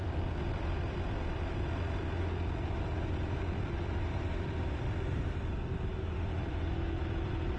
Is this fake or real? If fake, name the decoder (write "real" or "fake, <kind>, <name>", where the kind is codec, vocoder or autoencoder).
fake, vocoder, BigVGAN v2